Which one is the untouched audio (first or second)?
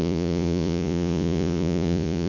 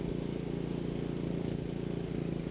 second